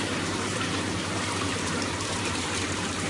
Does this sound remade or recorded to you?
remade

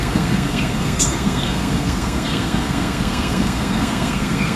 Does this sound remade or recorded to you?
remade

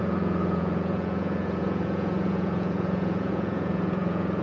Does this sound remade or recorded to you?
remade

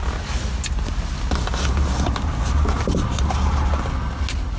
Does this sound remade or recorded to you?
recorded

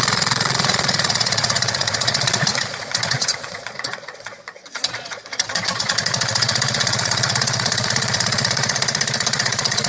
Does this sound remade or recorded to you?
remade